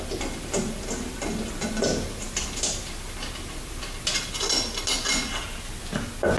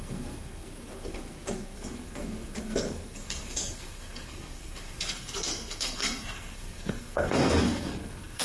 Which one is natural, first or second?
first